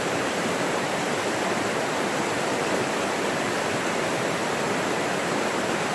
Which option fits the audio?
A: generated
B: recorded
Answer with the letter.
A